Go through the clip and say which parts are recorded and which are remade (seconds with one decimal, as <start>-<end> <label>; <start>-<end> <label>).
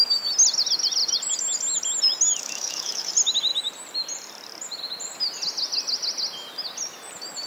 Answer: 0.0-2.4 recorded; 2.4-3.1 remade; 3.1-7.5 recorded